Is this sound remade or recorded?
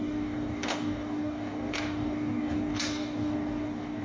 remade